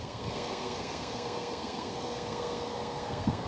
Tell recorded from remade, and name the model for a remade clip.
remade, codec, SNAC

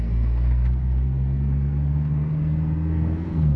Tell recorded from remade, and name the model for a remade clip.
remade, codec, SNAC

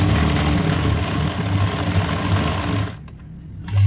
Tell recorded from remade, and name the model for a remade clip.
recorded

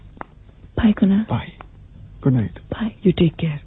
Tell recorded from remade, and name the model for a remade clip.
recorded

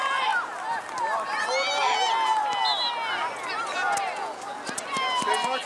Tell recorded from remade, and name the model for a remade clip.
recorded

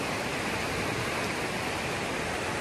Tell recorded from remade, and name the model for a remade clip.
recorded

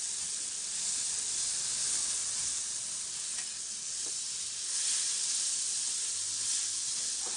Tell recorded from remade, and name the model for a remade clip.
recorded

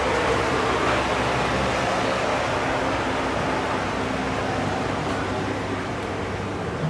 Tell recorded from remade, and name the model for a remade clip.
recorded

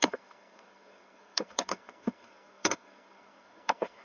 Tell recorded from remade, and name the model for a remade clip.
remade, codec, SNAC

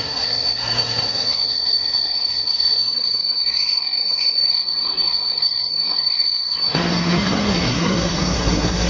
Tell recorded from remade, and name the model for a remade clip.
remade, codec, SNAC